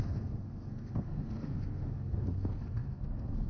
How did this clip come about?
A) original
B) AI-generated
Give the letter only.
B